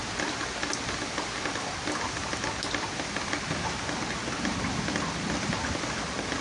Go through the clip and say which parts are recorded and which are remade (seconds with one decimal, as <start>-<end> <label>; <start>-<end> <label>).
0.0-6.4 recorded